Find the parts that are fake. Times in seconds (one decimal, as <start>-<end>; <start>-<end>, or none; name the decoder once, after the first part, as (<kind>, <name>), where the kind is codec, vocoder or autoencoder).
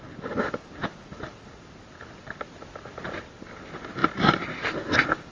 none